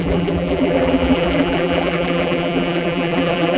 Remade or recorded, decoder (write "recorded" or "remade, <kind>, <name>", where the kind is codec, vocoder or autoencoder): remade, vocoder, BigVGAN v2